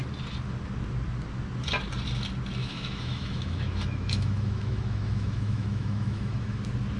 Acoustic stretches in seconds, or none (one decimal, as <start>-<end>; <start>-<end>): 0.0-2.6; 6.6-7.0

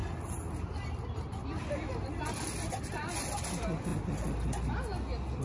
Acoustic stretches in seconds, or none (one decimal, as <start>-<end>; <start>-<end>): 0.0-5.4

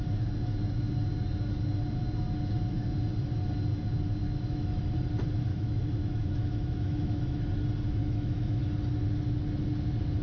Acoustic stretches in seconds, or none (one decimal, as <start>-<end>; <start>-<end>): 0.0-4.2; 4.8-5.5; 7.4-8.0; 8.6-10.2

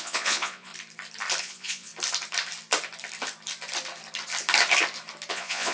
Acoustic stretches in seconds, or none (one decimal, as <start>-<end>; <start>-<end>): 0.7-1.4; 1.9-5.3

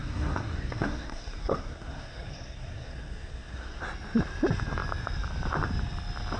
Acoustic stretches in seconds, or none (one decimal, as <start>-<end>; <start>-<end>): 3.8-6.4

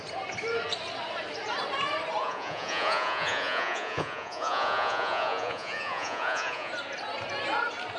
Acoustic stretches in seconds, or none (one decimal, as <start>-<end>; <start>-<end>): 0.0-2.2; 6.7-8.0

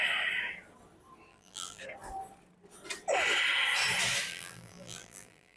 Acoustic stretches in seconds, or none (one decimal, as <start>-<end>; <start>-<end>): 0.0-1.3; 1.8-4.3

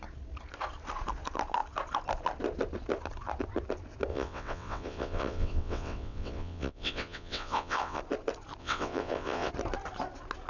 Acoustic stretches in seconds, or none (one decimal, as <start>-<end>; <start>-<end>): 0.0-4.1; 8.0-8.6; 9.5-10.5